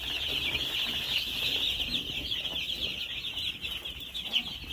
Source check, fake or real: real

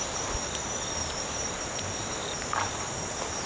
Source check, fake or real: real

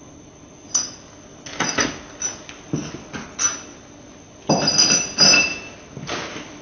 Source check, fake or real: real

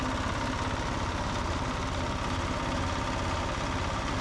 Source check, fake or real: real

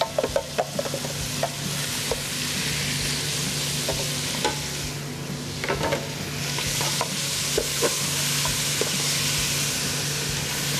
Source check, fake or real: real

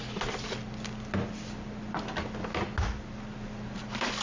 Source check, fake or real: real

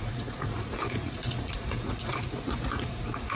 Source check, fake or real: fake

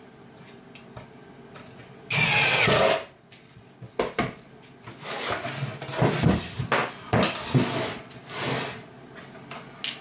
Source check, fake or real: real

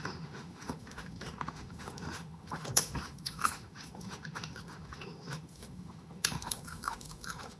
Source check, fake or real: fake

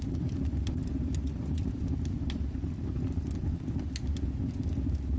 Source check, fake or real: real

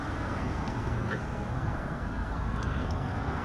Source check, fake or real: fake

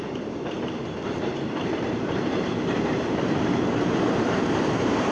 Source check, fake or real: fake